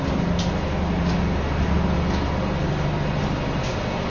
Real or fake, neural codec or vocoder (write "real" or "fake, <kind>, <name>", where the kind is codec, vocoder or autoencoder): real